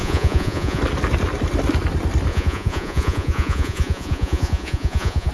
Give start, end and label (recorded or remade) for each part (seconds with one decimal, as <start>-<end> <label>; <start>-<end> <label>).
0.0-0.8 remade; 0.8-2.3 recorded; 2.3-5.3 remade